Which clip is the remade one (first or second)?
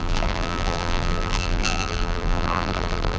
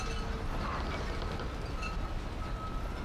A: first